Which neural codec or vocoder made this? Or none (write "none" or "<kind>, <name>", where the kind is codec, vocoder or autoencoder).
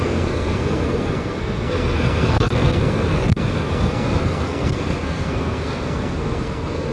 codec, SNAC